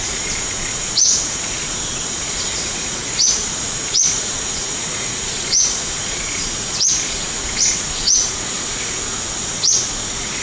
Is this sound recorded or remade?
remade